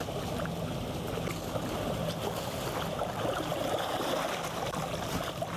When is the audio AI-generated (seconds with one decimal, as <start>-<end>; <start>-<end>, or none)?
none